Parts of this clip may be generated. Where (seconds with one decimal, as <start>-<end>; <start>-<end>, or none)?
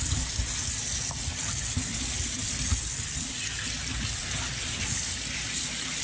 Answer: none